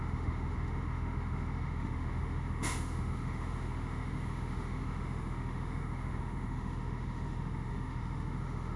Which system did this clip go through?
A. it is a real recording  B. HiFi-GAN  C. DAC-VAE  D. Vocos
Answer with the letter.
C